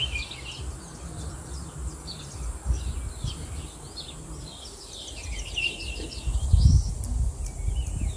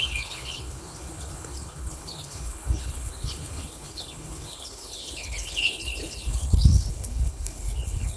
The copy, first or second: second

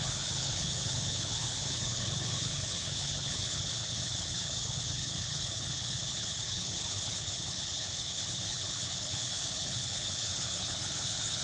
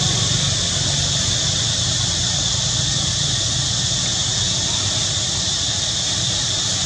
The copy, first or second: first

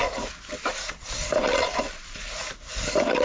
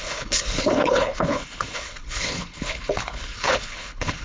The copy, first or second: second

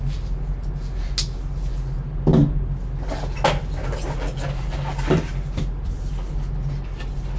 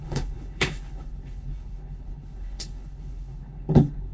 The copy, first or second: second